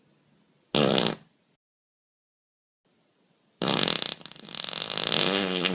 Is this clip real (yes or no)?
yes